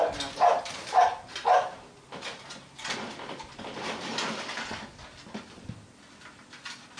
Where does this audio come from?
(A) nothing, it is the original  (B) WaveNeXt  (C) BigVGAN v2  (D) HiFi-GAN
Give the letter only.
A